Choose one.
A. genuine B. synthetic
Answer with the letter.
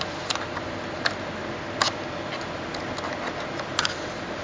A